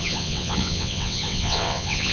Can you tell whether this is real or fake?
fake